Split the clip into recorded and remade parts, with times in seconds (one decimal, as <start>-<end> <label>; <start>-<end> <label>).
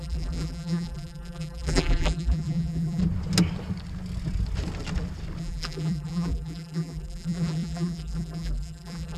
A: 0.0-3.0 remade; 3.0-5.4 recorded; 5.4-9.2 remade